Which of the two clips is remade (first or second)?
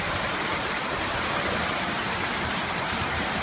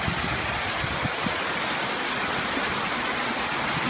first